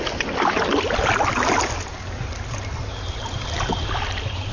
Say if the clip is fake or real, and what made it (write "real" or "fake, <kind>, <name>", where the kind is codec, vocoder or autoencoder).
real